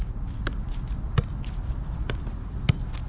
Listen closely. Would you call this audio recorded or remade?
recorded